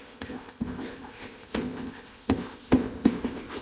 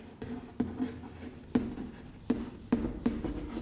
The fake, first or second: first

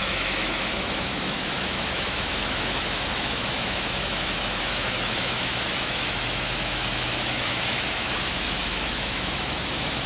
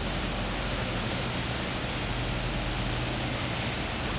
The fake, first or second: first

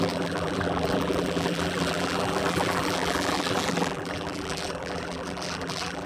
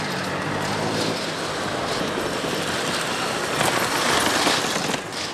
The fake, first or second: first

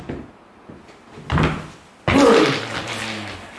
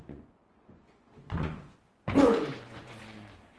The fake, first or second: second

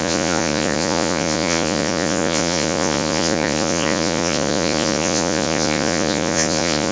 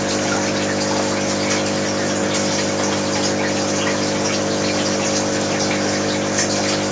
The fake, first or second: first